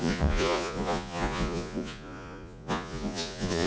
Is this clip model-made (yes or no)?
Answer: yes